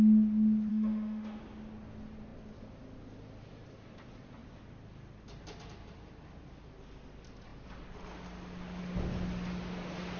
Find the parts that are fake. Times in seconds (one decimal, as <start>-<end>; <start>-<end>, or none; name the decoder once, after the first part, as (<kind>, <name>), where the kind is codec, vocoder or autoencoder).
0.7-1.4 (autoencoder, DAC-VAE)